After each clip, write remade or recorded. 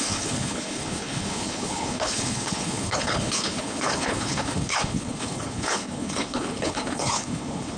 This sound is remade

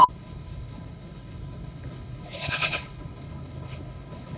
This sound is remade